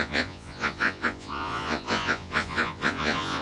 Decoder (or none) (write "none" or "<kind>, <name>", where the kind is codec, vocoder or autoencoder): vocoder, Vocos